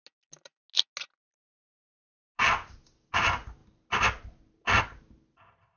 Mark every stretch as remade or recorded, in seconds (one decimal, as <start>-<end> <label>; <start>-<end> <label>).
0.0-5.8 recorded